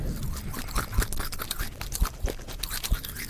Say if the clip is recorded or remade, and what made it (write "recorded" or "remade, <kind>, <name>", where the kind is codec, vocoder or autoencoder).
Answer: recorded